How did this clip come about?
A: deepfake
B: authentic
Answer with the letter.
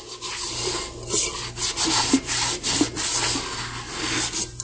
B